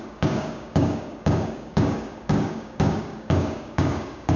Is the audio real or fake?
fake